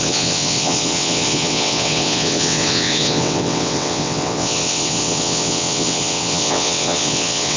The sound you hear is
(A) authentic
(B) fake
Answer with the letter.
B